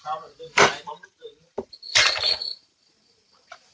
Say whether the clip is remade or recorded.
remade